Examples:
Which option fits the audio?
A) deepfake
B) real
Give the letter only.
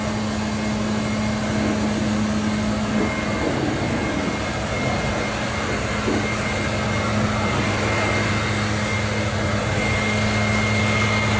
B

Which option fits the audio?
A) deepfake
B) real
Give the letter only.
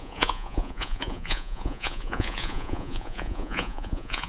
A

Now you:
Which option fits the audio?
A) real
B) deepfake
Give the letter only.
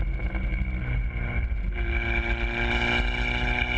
A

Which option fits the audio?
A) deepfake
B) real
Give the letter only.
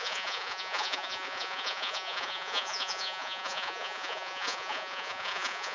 A